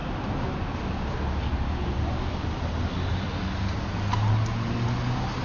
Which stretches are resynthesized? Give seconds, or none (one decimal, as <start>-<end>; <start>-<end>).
none